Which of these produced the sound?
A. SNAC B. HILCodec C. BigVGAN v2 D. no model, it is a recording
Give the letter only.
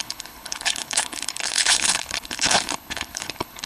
B